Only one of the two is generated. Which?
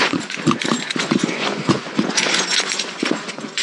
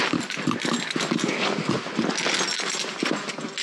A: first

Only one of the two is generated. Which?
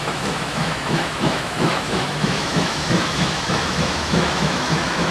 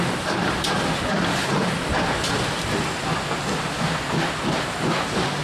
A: first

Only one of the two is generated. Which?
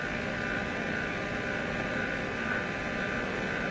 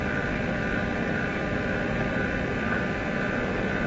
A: second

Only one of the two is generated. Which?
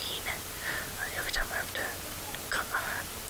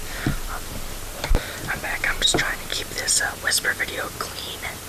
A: second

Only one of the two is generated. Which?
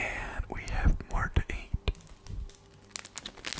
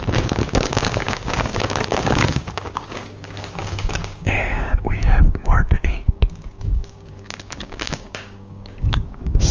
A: second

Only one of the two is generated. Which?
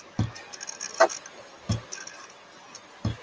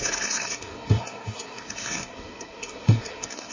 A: second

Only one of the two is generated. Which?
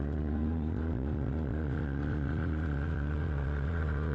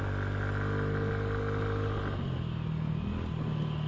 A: first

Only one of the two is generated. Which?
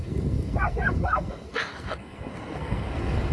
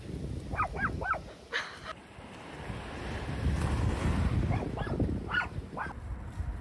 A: first